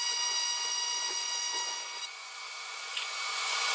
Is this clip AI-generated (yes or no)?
yes